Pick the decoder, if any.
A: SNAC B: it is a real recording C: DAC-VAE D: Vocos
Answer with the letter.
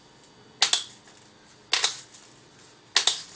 B